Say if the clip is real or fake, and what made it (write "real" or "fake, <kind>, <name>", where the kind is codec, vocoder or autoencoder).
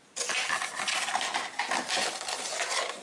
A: real